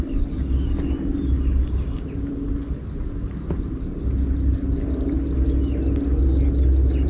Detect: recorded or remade recorded